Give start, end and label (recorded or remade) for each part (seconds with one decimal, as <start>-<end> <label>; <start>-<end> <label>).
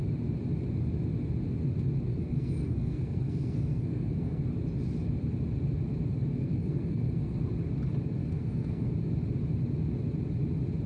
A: 0.0-2.1 recorded; 2.1-4.4 remade; 4.4-6.4 recorded; 6.4-7.4 remade; 7.4-8.2 recorded; 8.2-8.9 remade; 8.9-10.9 recorded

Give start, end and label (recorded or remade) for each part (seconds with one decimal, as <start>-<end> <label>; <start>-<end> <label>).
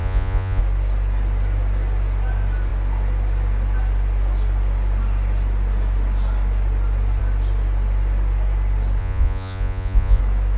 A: 0.0-0.6 remade; 0.6-9.0 recorded; 9.0-10.2 remade; 10.2-10.6 recorded